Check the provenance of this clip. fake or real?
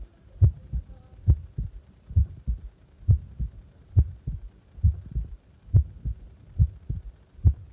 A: real